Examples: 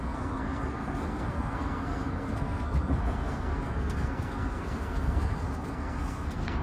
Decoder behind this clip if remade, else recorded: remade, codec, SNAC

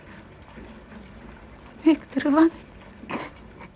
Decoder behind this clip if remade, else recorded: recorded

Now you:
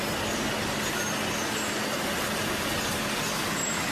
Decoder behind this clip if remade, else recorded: recorded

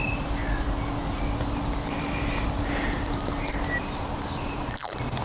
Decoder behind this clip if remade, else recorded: recorded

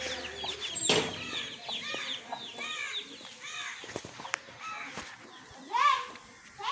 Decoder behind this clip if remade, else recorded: recorded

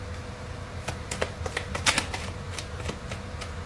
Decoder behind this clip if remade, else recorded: recorded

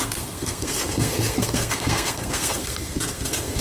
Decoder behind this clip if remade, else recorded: remade, codec, SNAC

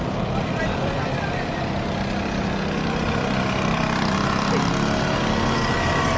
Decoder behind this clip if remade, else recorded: recorded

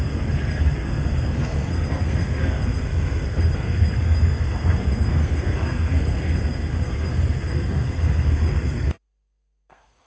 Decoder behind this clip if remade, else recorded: remade, codec, SNAC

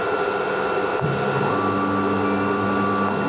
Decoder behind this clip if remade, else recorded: recorded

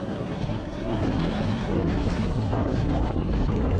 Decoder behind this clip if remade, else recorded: remade, codec, SNAC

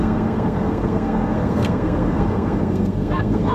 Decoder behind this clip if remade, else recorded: remade, codec, SNAC